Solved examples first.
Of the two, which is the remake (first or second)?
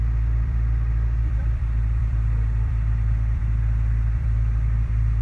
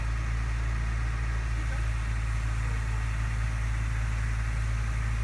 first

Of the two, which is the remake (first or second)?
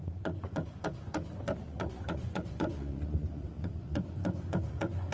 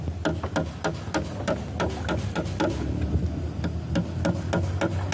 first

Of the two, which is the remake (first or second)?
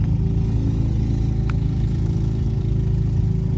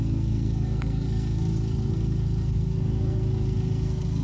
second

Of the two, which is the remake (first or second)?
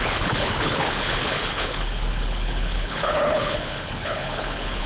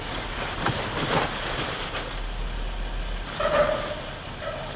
first